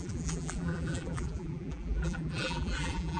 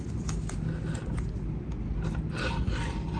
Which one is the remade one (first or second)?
first